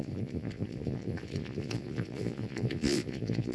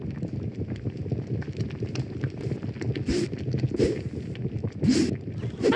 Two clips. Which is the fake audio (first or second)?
first